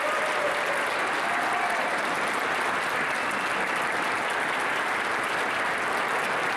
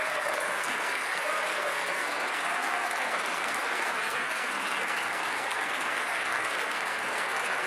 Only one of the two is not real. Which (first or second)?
second